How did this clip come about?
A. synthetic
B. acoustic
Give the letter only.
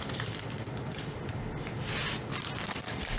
A